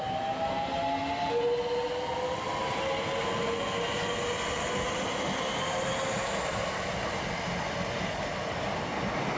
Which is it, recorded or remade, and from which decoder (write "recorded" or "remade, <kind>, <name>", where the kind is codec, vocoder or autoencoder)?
recorded